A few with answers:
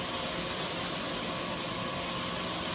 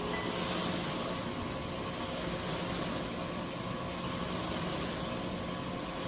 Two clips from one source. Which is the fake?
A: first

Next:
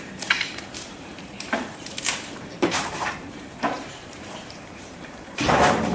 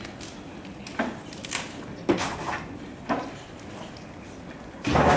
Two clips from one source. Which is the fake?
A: first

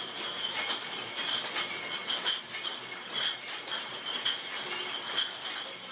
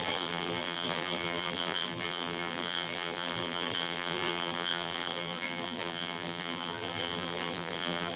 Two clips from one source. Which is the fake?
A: second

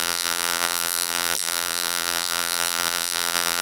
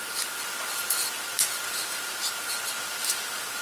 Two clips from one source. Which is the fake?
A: first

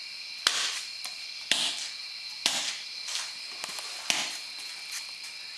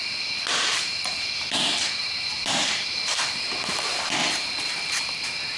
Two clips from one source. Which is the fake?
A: second